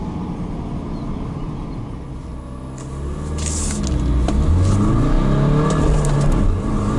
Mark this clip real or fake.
real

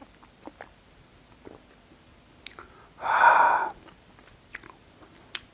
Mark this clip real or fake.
real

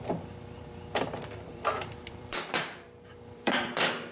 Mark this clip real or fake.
fake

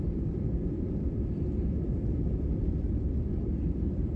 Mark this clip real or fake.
fake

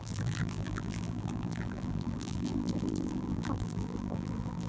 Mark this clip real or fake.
fake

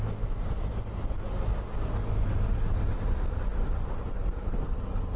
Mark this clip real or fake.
real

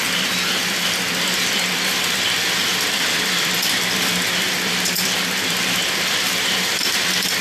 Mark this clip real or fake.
fake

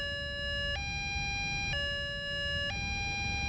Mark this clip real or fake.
real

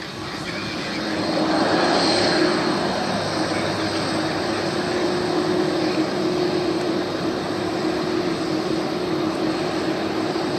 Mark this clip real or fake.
real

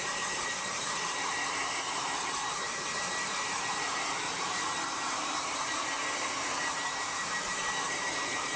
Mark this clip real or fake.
fake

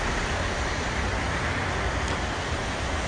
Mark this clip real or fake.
real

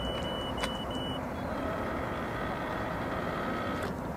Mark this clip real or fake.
fake